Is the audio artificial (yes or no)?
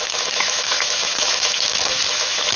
yes